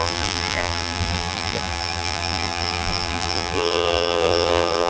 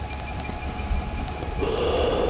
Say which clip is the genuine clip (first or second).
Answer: second